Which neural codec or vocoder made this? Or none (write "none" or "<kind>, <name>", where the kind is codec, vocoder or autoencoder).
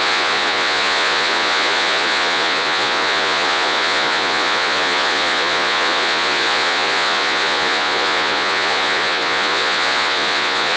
vocoder, Vocos